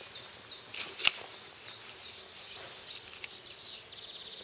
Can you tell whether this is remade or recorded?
recorded